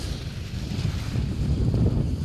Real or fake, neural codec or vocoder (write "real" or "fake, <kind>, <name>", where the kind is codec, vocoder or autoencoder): real